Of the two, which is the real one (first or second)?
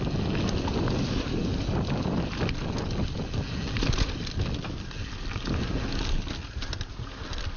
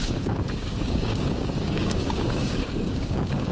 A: first